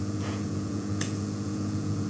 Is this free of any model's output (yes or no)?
no